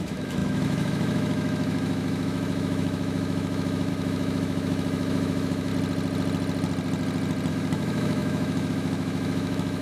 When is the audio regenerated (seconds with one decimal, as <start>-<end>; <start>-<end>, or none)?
0.0-5.7; 7.5-9.8